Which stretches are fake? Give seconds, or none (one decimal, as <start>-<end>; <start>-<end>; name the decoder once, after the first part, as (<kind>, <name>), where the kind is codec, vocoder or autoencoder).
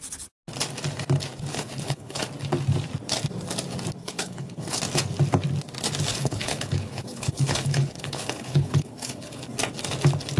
1.5-2.2 (codec, HILCodec); 4.0-4.8; 6.1-9.4